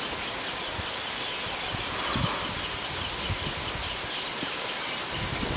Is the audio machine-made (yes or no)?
no